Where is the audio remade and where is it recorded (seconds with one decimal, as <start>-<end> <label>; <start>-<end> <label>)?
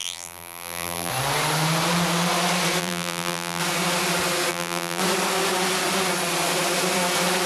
0.0-1.1 remade; 1.1-2.8 recorded; 2.8-3.6 remade; 3.6-4.5 recorded; 4.5-5.0 remade; 5.0-7.5 recorded